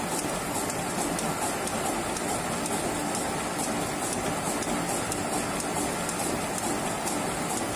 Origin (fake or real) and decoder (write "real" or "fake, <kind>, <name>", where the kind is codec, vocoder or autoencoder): real